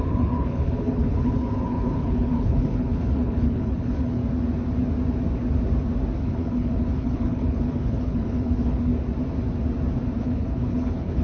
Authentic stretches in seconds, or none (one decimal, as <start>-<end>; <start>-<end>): 4.2-6.2; 8.9-10.2